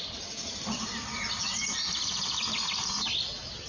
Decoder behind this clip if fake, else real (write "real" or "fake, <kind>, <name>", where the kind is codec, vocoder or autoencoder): real